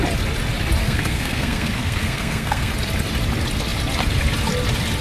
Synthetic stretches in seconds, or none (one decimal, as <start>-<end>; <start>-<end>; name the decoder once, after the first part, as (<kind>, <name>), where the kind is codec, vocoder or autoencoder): 0.8-2.7 (codec, SNAC)